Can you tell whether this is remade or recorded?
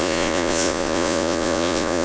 remade